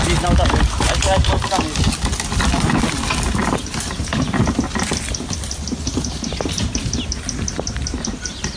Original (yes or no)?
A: yes